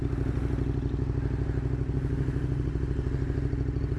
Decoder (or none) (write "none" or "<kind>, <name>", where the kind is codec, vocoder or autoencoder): none